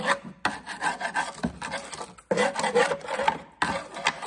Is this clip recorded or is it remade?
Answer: recorded